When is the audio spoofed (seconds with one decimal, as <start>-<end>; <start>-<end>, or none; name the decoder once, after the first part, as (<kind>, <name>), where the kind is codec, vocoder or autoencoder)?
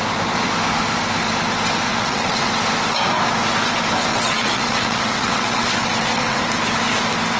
1.9-2.5 (vocoder, WaveNeXt); 4.1-6.4